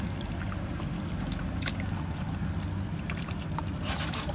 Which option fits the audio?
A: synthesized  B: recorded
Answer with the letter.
B